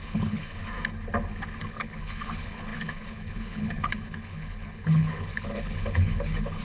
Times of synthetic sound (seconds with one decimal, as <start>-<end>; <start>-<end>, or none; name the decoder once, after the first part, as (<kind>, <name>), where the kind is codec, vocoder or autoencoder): 0.0-0.6 (codec, HILCodec); 1.6-6.6